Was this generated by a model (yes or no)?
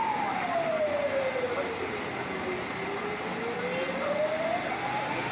no